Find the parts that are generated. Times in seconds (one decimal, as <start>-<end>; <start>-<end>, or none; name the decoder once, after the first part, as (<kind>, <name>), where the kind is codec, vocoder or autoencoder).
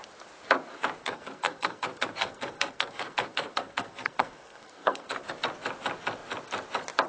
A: 1.0-5.3 (codec, SNAC)